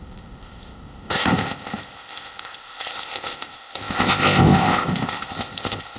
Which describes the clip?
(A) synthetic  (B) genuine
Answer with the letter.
A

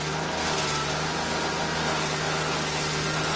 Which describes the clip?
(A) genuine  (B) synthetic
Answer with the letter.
A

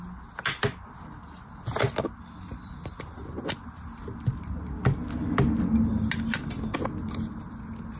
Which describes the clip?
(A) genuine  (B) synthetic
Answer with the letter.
A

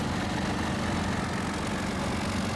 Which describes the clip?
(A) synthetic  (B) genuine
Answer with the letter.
B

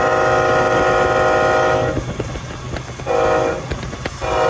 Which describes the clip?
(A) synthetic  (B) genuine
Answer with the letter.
B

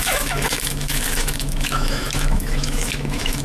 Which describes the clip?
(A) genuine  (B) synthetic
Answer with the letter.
B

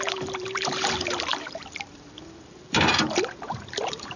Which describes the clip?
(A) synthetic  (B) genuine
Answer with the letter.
A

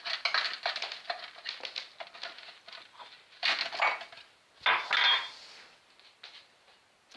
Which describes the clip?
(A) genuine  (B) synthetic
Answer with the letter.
A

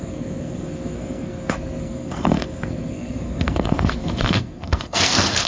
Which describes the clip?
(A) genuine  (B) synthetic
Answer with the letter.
B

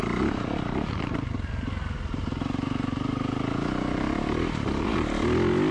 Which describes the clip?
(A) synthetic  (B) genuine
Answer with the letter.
B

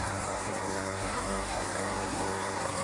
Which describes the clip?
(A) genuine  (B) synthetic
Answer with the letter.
B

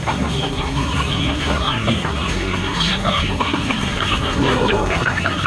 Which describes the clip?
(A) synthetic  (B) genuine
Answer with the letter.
A